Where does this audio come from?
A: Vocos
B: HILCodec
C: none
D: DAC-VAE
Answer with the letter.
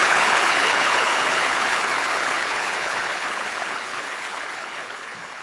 B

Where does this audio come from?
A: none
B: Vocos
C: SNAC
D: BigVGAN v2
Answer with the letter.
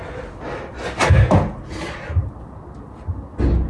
A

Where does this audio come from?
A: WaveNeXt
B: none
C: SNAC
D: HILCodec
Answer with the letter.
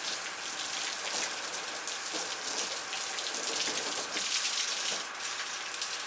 B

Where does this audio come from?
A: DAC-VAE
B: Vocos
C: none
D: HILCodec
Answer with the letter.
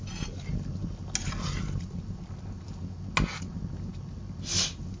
C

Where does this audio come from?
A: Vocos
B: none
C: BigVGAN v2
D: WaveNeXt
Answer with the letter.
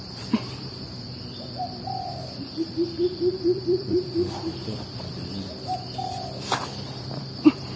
C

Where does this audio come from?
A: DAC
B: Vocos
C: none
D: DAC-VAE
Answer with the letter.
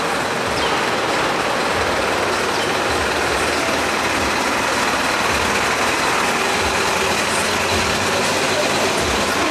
C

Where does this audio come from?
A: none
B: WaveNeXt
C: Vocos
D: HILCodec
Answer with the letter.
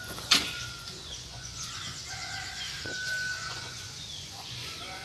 C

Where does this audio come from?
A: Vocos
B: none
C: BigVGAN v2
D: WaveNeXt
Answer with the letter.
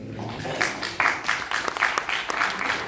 B